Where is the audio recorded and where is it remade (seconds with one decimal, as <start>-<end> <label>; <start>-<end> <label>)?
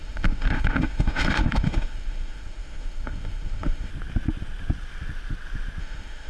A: 0.0-3.9 remade; 3.9-5.8 recorded; 5.8-6.3 remade